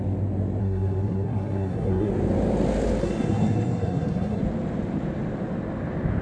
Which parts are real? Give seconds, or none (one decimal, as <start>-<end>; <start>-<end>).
0.0-0.6; 2.1-3.0; 4.4-6.2